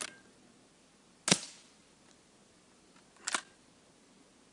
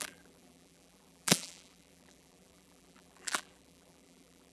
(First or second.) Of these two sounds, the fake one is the second